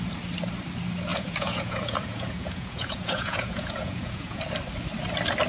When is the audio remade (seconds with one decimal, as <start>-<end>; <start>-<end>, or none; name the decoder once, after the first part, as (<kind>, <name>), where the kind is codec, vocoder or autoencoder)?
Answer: 1.1-4.4 (vocoder, Vocos)